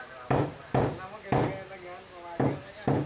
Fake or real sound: real